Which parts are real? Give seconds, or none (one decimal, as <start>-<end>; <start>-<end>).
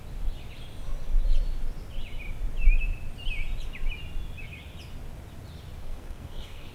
0.0-5.8